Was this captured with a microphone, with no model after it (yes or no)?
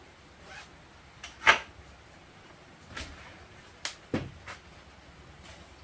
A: yes